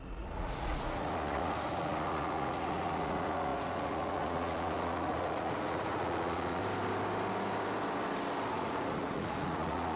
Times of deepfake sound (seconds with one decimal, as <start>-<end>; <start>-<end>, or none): 0.0-6.6; 8.5-10.0